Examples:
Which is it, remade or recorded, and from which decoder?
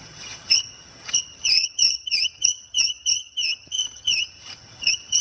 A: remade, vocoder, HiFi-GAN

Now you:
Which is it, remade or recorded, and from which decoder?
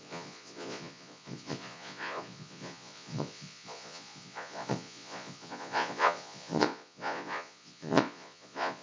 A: remade, vocoder, Vocos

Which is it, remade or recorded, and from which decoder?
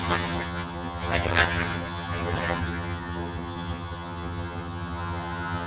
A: remade, vocoder, HiFi-GAN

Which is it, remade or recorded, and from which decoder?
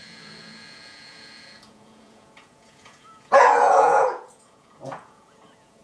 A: remade, vocoder, Vocos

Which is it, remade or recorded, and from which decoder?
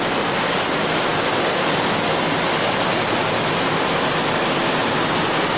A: recorded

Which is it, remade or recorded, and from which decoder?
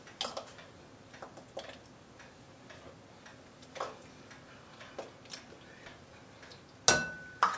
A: recorded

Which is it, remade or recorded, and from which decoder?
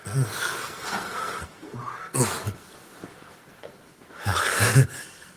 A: remade, codec, SNAC